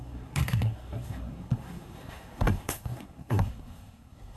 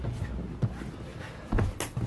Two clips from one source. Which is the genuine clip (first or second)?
second